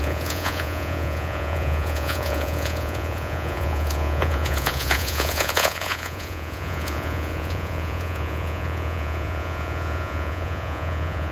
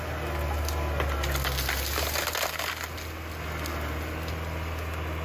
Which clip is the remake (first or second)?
first